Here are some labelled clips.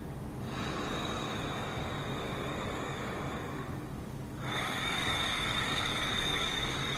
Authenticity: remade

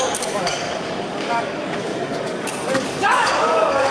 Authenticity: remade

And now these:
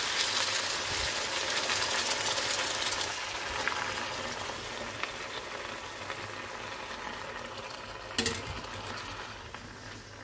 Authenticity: recorded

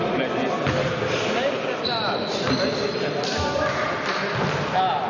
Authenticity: recorded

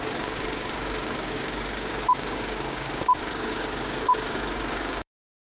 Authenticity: remade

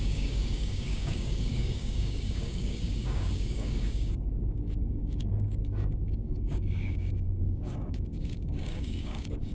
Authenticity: remade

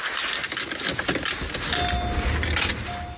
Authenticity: recorded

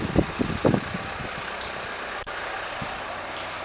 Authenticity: recorded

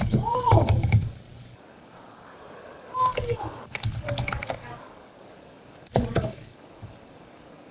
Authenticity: remade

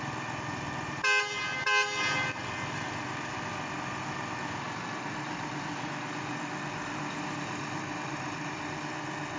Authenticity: recorded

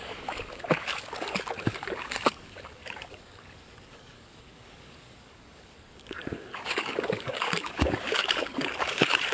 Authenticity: remade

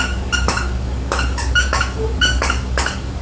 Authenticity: remade